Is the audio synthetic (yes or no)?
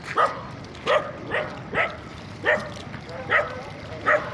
no